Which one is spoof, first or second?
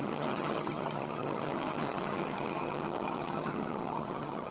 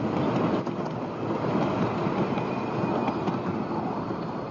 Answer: first